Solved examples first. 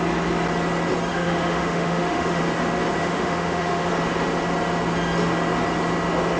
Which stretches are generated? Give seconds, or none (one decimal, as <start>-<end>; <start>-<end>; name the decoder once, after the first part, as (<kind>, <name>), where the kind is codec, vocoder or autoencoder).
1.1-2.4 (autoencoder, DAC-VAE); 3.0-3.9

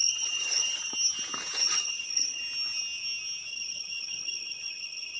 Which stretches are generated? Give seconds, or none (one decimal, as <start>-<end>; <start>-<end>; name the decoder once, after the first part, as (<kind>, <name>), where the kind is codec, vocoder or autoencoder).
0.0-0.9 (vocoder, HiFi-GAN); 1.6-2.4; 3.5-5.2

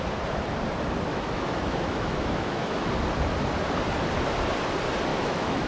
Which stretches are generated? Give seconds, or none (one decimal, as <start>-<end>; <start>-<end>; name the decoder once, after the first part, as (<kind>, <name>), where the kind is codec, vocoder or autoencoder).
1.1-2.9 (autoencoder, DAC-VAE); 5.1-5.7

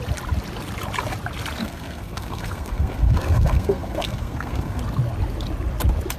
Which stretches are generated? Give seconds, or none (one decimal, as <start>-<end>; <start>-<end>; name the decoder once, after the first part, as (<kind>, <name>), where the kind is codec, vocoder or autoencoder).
1.6-4.8 (codec, SNAC)

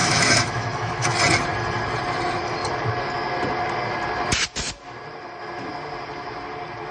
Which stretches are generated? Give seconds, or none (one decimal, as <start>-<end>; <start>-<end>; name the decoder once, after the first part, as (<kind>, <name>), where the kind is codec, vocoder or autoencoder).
0.0-1.2 (autoencoder, DAC-VAE)